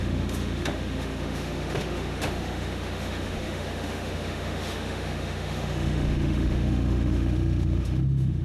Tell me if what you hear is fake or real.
fake